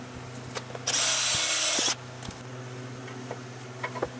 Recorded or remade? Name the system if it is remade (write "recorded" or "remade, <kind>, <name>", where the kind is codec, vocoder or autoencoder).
recorded